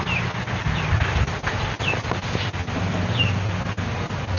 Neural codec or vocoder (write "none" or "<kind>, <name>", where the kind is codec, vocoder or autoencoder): none